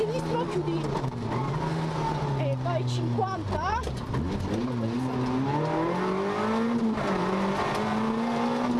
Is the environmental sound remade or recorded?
recorded